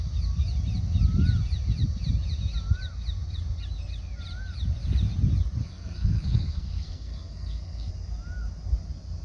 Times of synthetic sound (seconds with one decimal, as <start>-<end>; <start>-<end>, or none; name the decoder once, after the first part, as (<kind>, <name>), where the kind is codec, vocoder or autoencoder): 5.6-7.9 (codec, SNAC)